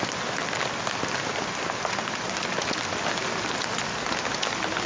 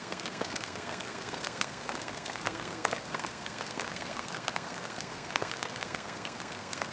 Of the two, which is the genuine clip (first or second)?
first